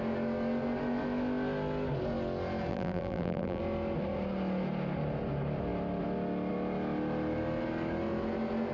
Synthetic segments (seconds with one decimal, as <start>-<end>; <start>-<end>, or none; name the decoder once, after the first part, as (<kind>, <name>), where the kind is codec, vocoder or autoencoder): 2.7-3.6 (vocoder, BigVGAN v2)

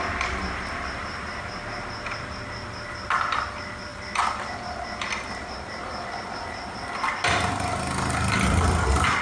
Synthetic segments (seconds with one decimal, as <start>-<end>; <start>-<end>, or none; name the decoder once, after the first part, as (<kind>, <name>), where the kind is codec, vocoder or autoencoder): 3.9-4.6 (vocoder, BigVGAN v2)

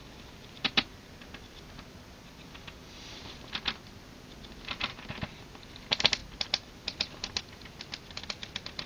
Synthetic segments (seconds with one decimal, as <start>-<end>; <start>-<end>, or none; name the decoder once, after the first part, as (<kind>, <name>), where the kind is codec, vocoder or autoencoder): 6.2-6.7 (vocoder, BigVGAN v2)

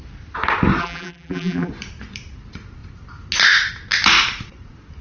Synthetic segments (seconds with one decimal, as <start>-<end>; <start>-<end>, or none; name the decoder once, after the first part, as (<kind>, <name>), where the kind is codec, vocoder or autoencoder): 0.8-1.7 (vocoder, BigVGAN v2)

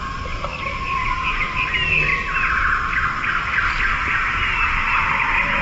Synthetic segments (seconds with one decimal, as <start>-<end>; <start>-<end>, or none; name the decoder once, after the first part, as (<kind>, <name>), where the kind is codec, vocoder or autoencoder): 1.0-1.5 (vocoder, Vocos)